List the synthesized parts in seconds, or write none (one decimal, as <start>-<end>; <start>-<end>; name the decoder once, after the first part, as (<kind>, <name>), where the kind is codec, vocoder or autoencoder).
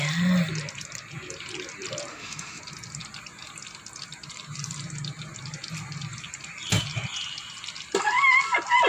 2.1-2.6 (autoencoder, DAC-VAE)